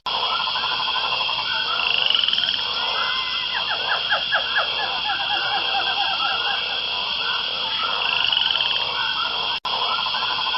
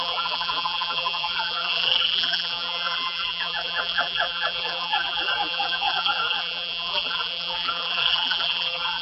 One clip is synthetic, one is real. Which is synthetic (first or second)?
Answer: second